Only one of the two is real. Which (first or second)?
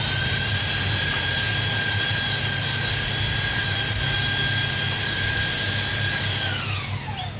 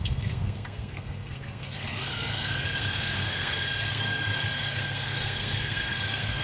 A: first